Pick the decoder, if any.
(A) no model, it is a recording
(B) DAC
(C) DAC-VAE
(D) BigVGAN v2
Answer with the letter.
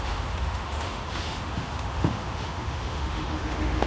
C